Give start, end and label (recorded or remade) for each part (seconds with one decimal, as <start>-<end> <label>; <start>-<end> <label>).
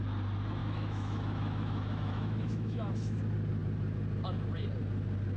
0.0-0.6 recorded; 0.6-3.2 remade; 3.2-5.4 recorded